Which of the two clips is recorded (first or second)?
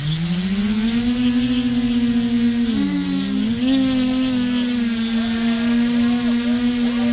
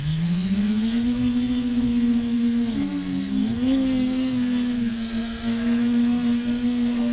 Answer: first